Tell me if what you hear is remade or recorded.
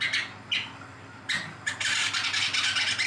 recorded